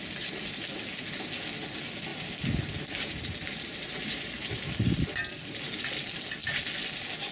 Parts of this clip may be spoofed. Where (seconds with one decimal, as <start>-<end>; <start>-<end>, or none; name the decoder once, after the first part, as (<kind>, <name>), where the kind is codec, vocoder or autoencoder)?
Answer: 2.1-5.8 (vocoder, BigVGAN v2)